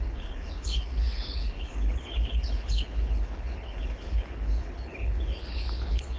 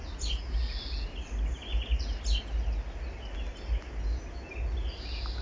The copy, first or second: first